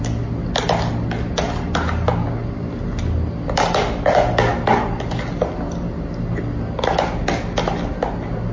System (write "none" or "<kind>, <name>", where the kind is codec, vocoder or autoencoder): none